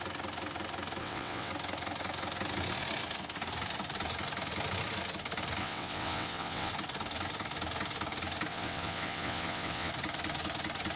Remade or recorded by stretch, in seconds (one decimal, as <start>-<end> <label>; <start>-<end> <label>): 0.0-1.0 recorded; 1.0-1.5 remade; 1.5-5.6 recorded; 5.6-6.7 remade; 6.7-8.5 recorded; 8.5-9.9 remade; 9.9-11.0 recorded